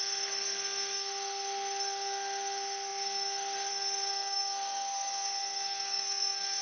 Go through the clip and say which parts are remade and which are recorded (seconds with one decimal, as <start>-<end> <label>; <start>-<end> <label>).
0.0-6.6 remade